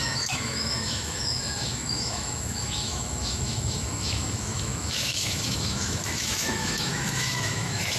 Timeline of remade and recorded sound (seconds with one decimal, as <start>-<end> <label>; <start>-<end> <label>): 0.0-8.0 remade